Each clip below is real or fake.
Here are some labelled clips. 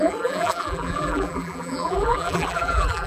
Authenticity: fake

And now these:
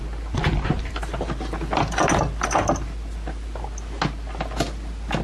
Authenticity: real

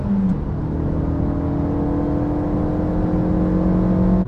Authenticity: real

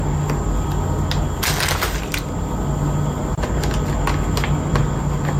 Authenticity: real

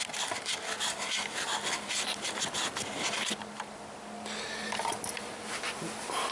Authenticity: real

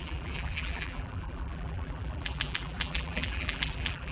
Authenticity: fake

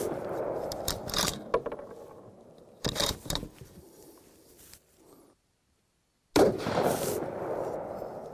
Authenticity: real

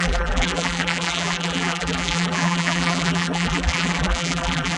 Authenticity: fake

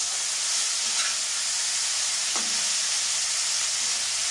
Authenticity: real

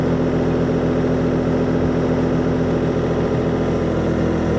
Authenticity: real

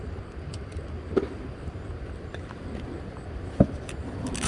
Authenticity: real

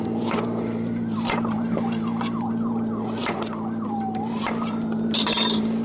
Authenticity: fake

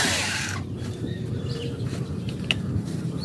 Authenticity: fake